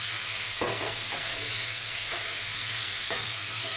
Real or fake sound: fake